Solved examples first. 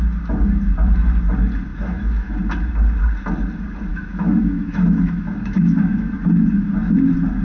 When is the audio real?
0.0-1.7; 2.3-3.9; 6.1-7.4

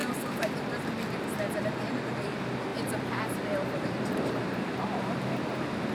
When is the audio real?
0.6-2.7; 5.3-5.9

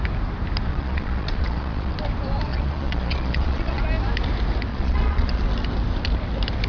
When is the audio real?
0.0-0.7; 1.9-2.5; 3.8-4.7; 5.4-6.7

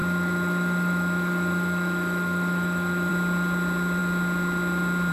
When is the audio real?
3.1-5.1

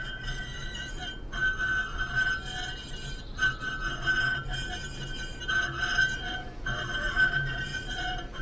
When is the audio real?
1.0-5.5

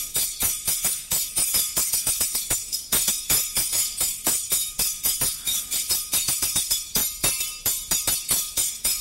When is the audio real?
7.0-8.2

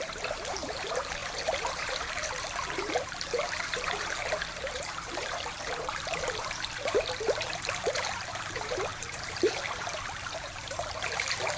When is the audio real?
none

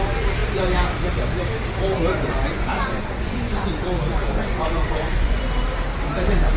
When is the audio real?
0.0-2.5; 5.4-6.6